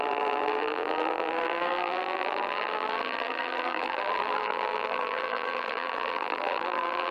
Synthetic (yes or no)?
yes